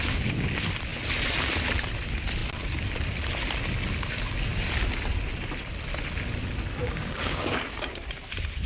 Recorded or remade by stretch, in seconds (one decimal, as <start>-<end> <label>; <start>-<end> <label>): 0.0-6.8 recorded; 6.8-7.6 remade; 7.6-8.7 recorded